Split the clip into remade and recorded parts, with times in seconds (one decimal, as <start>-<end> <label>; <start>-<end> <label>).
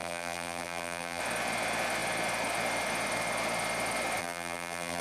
0.0-1.2 remade; 1.2-4.2 recorded; 4.2-5.0 remade